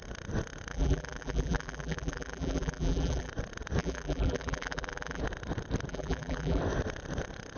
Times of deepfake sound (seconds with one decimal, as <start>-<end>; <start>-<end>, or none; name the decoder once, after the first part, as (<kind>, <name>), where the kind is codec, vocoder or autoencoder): 0.7-3.3 (vocoder, BigVGAN v2); 3.8-5.2; 5.9-6.6

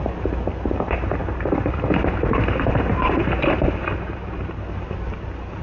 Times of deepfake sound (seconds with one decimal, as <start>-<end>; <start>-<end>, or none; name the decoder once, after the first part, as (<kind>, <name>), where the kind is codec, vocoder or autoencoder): 1.2-4.6 (vocoder, BigVGAN v2)

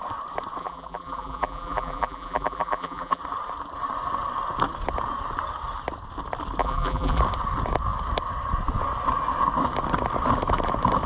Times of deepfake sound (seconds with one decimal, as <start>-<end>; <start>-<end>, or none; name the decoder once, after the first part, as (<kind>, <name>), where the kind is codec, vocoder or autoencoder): 0.6-3.2 (vocoder, BigVGAN v2); 6.6-7.2

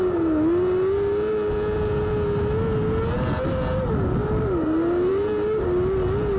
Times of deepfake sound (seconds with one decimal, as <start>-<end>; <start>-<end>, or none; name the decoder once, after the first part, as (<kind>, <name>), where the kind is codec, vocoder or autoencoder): none